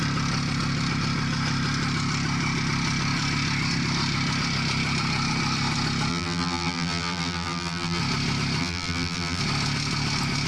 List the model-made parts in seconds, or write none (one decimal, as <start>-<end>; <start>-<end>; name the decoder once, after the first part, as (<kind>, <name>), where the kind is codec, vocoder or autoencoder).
6.1-8.0 (vocoder, BigVGAN v2); 8.6-9.4

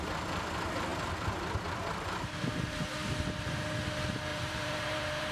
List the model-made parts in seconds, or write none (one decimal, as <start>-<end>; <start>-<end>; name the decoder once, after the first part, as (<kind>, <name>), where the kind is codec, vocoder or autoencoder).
4.3-5.3 (vocoder, BigVGAN v2)

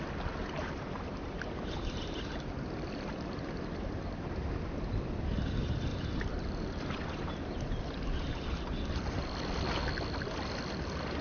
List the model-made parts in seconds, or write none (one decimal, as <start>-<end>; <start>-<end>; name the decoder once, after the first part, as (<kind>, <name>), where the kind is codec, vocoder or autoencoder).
0.4-4.4 (vocoder, BigVGAN v2); 5.9-7.8

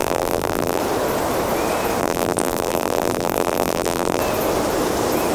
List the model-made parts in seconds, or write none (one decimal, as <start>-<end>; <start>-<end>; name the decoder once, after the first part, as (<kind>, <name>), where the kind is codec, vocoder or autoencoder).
0.0-0.8 (vocoder, BigVGAN v2); 2.0-4.2

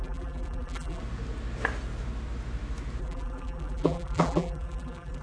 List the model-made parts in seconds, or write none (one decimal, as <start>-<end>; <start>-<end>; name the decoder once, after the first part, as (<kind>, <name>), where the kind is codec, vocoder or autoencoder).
0.0-1.0 (vocoder, BigVGAN v2); 3.0-5.2